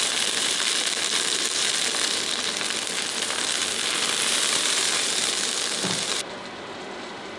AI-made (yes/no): yes